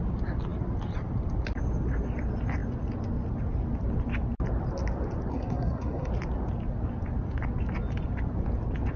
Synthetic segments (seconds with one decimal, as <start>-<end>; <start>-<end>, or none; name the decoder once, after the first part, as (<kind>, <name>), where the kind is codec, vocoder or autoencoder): 5.3-6.1 (codec, SNAC)